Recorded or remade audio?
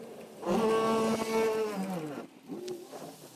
recorded